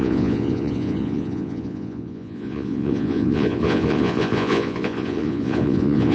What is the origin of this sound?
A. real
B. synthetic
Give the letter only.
B